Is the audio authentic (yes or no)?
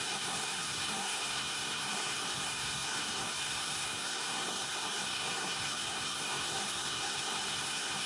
no